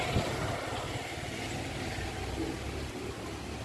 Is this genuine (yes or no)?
yes